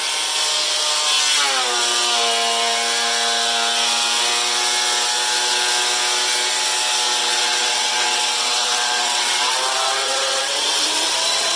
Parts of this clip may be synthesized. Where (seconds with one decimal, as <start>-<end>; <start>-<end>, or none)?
7.2-11.6